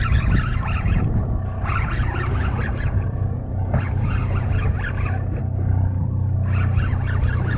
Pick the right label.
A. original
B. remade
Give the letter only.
A